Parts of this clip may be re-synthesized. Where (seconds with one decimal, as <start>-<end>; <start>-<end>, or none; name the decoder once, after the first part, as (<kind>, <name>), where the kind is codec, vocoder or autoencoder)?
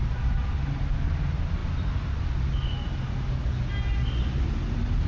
none